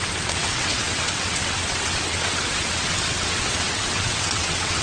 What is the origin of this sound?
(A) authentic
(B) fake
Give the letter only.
B